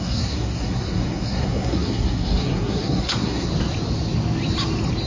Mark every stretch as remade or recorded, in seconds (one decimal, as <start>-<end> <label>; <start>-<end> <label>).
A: 0.0-3.5 remade; 3.5-5.1 recorded